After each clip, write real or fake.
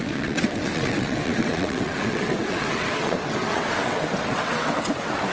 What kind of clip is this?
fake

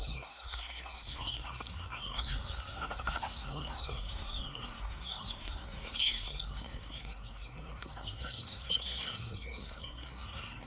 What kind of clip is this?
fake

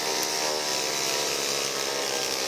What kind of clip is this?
real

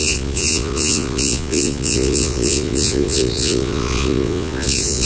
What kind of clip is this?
fake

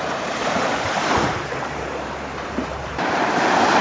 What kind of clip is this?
fake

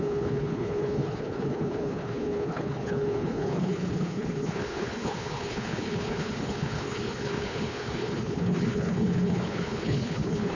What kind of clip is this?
fake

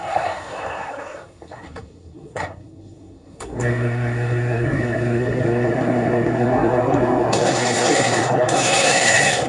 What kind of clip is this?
fake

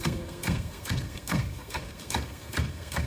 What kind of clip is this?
fake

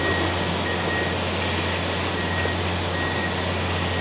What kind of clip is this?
real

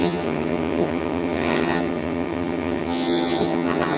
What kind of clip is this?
fake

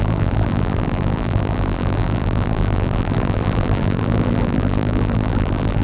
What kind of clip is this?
fake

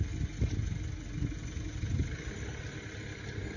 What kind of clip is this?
real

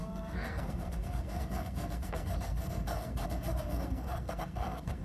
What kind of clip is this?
fake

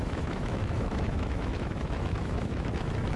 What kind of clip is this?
fake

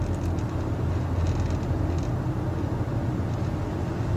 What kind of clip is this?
real